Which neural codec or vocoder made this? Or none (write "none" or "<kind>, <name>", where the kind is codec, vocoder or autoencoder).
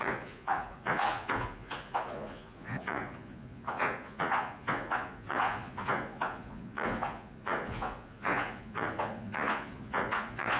vocoder, Vocos